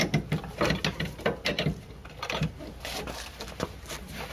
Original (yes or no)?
yes